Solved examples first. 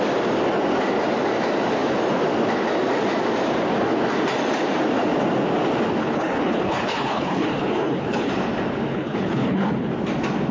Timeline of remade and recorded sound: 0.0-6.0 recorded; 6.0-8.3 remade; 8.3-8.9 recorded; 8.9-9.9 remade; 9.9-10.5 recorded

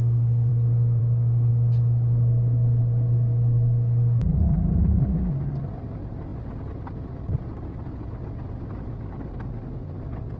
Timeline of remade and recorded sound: 0.0-10.4 recorded

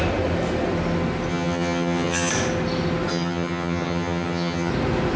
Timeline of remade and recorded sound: 0.0-1.3 recorded; 1.3-2.3 remade; 2.3-3.1 recorded; 3.1-4.7 remade; 4.7-5.2 recorded